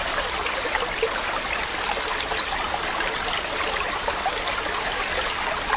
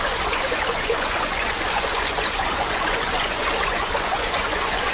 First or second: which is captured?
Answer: first